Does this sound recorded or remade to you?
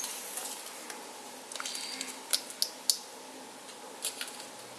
recorded